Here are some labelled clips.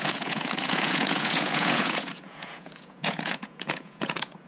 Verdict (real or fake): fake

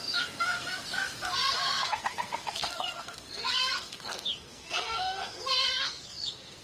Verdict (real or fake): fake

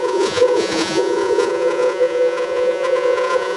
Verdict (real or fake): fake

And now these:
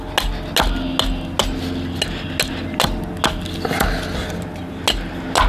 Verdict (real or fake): real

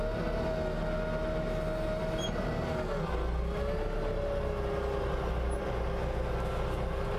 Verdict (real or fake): real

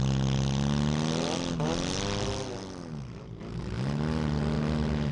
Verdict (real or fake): real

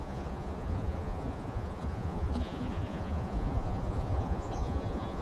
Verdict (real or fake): fake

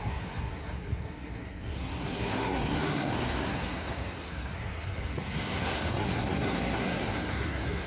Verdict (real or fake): fake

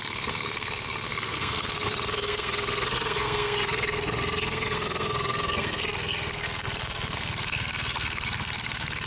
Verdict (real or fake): fake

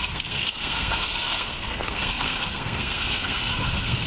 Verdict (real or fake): fake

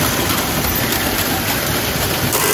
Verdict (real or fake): fake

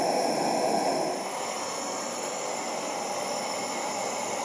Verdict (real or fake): real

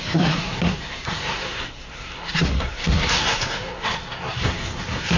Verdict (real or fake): fake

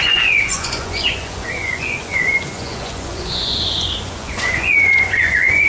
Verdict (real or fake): fake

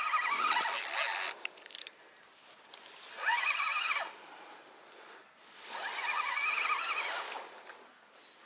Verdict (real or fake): real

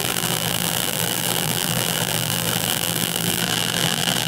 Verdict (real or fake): fake